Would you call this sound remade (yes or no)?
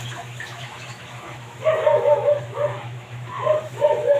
yes